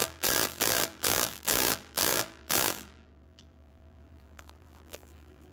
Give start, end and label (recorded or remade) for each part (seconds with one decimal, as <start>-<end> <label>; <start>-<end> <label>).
0.0-5.5 remade